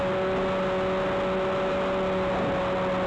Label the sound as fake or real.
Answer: real